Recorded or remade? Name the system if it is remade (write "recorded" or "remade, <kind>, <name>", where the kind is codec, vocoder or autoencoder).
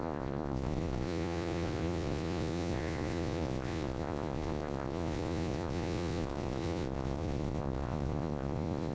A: remade, vocoder, Vocos